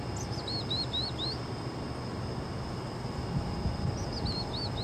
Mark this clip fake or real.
real